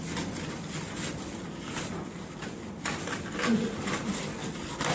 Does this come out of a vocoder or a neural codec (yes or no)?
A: no